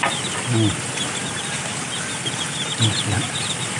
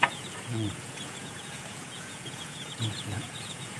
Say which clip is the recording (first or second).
first